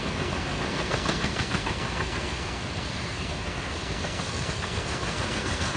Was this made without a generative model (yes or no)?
no